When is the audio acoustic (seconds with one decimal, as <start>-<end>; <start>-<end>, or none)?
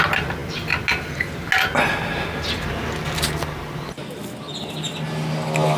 0.0-5.8